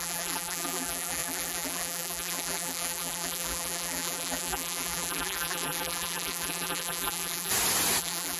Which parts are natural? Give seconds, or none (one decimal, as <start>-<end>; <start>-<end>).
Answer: 7.5-8.0